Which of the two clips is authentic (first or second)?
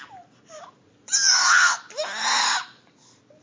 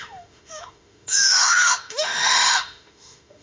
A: first